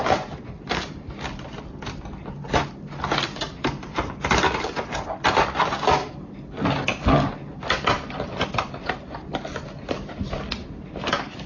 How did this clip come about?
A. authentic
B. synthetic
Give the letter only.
A